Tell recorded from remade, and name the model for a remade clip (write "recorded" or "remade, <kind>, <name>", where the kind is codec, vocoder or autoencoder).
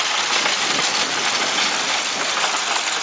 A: recorded